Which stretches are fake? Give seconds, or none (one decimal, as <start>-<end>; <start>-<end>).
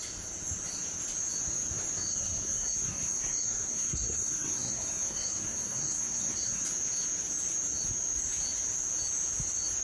2.1-6.6